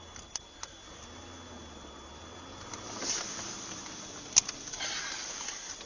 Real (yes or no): yes